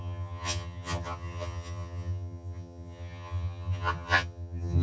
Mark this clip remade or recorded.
remade